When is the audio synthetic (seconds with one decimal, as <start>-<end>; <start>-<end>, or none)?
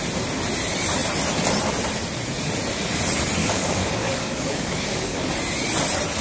3.4-5.3